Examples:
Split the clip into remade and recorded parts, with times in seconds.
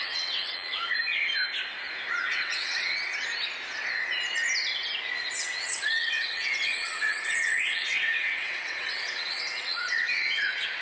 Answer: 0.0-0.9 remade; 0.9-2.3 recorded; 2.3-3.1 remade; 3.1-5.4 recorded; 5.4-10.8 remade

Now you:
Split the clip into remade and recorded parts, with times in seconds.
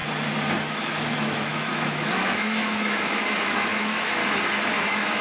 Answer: 0.0-0.6 recorded; 0.6-4.2 remade; 4.2-4.8 recorded; 4.8-5.2 remade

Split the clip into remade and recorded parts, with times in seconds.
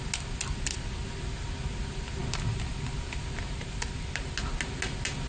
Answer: 0.0-5.3 recorded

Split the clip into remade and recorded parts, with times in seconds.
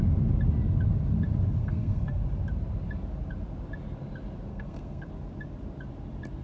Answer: 0.0-1.6 recorded; 1.6-2.2 remade; 2.2-4.5 recorded; 4.5-5.1 remade; 5.1-6.4 recorded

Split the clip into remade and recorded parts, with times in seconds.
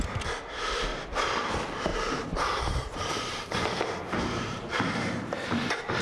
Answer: 0.0-0.9 recorded; 0.9-1.5 remade; 1.5-1.9 recorded; 1.9-5.5 remade; 5.5-6.0 recorded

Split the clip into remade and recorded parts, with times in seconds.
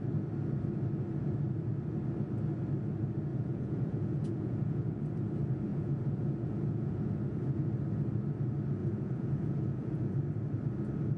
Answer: 0.0-3.3 recorded; 3.3-4.9 remade; 4.9-5.7 recorded; 5.7-7.7 remade; 7.7-8.8 recorded; 8.8-10.2 remade; 10.2-11.2 recorded